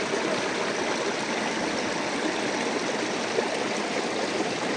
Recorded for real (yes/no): yes